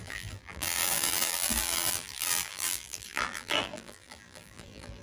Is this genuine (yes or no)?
no